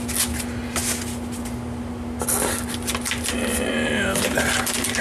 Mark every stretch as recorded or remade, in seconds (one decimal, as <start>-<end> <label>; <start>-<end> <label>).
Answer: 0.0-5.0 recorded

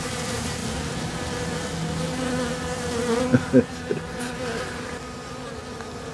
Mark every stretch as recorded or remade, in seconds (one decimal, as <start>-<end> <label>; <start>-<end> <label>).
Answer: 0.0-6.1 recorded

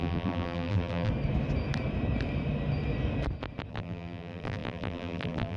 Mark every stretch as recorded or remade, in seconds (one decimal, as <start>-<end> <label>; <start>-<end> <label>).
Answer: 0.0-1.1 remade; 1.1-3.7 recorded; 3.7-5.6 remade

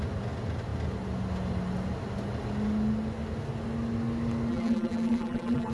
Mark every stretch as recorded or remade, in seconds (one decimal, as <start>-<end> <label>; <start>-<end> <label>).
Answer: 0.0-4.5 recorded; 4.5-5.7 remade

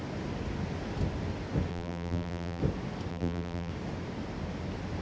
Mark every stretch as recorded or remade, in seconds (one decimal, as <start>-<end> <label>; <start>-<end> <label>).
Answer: 0.0-1.7 recorded; 1.7-2.6 remade; 2.6-3.1 recorded; 3.1-3.7 remade; 3.7-5.0 recorded

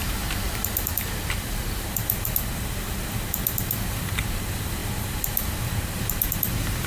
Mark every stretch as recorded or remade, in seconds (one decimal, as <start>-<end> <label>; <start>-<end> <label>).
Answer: 0.0-6.9 remade

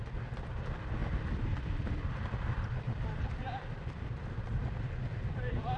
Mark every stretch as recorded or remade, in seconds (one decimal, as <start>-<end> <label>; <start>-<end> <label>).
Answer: 0.0-1.0 recorded; 1.0-2.8 remade; 2.8-5.8 recorded

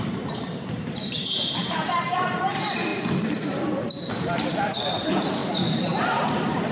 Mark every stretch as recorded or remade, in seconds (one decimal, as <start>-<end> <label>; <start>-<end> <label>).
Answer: 0.0-6.7 remade